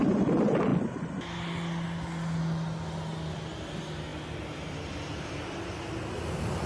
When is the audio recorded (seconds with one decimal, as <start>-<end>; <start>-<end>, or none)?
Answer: 0.0-6.7